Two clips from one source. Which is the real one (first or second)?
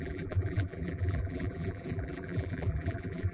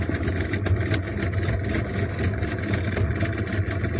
second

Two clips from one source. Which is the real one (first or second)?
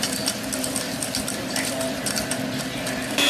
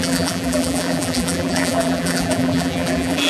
first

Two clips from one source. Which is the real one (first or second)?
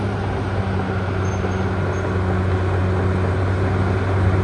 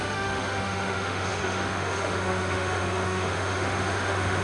first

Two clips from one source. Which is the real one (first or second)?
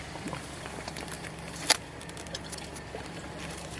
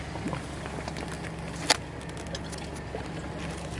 second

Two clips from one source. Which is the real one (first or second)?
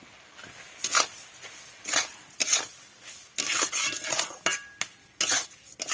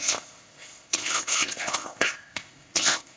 first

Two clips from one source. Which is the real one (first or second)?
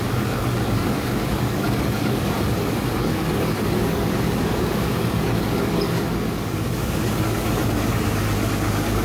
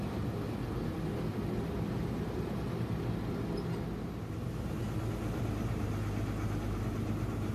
second